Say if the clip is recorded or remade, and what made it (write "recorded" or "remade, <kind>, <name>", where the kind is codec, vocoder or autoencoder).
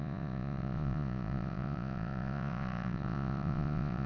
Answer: remade, vocoder, Vocos